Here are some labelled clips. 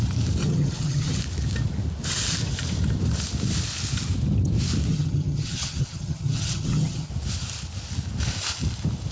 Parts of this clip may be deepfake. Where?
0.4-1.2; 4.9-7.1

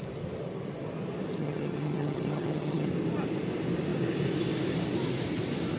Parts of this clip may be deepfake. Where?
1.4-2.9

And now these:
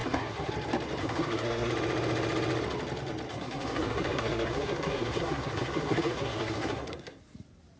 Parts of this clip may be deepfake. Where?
0.0-0.5; 1.0-1.7; 3.3-7.2